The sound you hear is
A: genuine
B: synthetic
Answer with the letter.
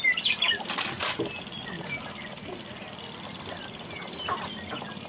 A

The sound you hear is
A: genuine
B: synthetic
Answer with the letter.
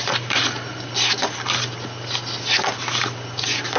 A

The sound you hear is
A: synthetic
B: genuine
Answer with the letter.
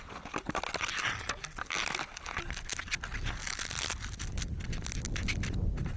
B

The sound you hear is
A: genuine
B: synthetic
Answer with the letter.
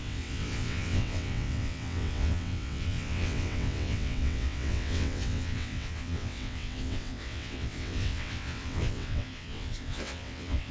B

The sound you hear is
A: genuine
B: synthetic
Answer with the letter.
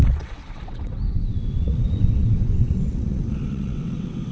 B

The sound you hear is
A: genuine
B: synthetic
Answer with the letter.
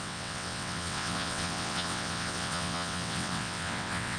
B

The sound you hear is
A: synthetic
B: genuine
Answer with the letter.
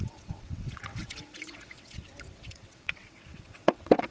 A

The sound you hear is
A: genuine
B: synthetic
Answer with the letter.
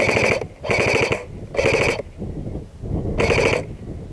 A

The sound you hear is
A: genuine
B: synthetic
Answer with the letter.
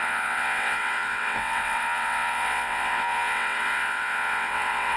B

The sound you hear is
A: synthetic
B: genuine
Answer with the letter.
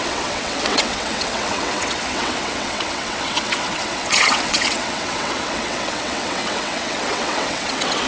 A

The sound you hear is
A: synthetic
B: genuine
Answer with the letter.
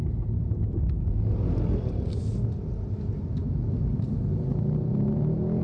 B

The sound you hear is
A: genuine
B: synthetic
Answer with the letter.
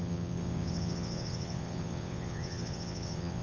B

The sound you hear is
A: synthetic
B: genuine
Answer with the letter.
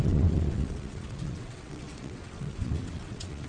A